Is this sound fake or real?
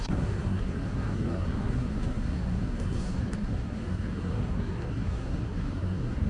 fake